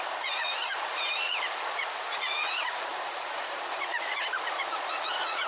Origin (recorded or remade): remade